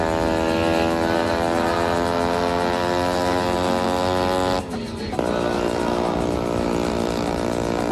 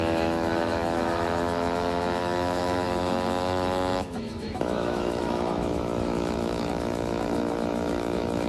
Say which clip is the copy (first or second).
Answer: second